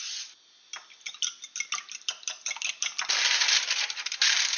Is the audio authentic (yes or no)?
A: yes